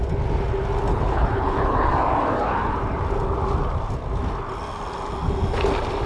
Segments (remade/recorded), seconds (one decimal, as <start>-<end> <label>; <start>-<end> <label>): 0.0-0.9 recorded; 0.9-1.9 remade; 1.9-6.1 recorded

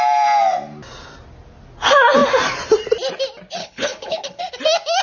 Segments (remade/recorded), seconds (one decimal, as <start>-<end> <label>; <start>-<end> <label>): 0.0-3.6 recorded; 3.6-4.4 remade; 4.4-5.0 recorded

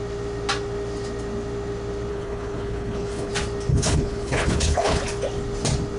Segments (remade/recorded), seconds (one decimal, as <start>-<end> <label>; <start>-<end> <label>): 0.0-2.1 recorded; 2.1-3.3 remade; 3.3-3.7 recorded; 3.7-5.0 remade; 5.0-6.0 recorded

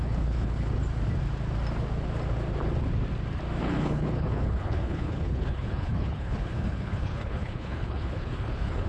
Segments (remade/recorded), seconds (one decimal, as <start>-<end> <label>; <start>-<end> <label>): 0.0-0.8 remade; 0.8-3.6 recorded; 3.6-8.9 remade

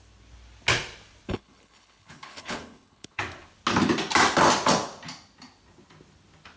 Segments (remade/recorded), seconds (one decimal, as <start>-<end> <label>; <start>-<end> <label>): 0.0-1.3 recorded; 1.3-3.2 remade; 3.2-6.6 recorded

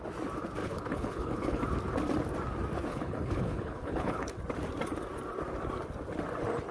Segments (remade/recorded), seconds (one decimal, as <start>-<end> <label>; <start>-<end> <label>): 0.0-0.6 recorded; 0.6-1.6 remade; 1.6-2.9 recorded; 2.9-4.4 remade; 4.4-6.7 recorded